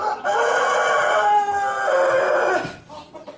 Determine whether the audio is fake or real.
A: real